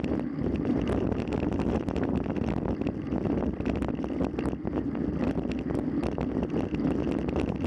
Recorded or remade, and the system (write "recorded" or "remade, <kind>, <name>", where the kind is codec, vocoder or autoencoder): recorded